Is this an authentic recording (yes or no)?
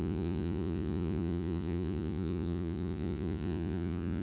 no